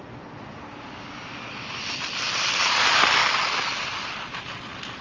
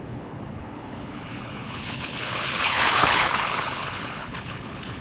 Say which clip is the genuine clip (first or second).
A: first